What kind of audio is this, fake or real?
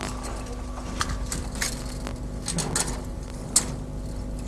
real